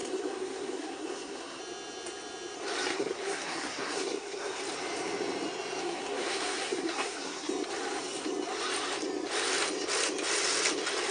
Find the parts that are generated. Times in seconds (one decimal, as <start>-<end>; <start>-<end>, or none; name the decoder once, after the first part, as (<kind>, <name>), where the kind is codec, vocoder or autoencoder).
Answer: 0.0-1.6 (codec, SNAC); 2.9-4.6; 5.8-7.5